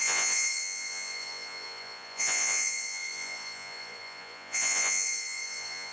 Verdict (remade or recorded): remade